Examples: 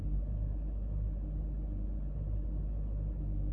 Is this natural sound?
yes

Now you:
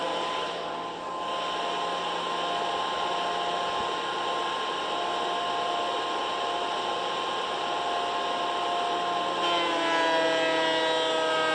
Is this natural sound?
yes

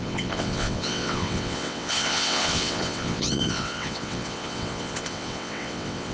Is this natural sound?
no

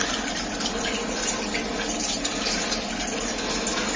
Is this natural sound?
yes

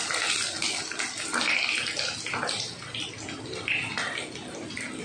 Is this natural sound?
yes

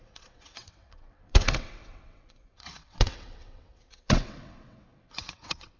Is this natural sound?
no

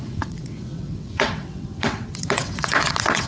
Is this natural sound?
no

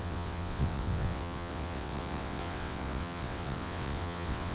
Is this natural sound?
no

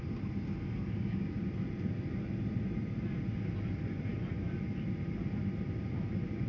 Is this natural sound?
yes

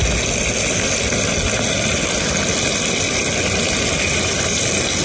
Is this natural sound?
yes